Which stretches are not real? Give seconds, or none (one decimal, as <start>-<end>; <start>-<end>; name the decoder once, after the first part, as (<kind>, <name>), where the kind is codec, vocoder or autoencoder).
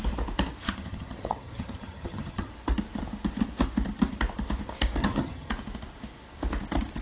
0.6-2.5 (vocoder, HiFi-GAN); 5.0-5.5